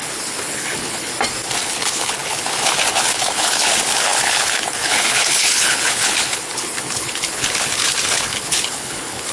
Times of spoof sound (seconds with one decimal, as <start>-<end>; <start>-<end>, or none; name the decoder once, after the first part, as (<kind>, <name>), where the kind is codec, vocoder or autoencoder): 0.0-1.1 (codec, HILCodec); 1.6-9.3